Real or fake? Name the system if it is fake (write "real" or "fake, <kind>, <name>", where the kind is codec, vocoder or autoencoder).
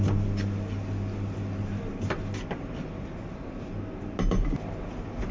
real